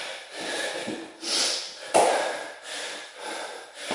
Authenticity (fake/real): real